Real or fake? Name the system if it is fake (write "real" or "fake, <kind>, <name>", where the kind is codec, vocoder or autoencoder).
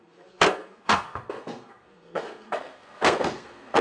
fake, codec, SNAC